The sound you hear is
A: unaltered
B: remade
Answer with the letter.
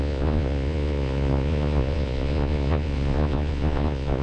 B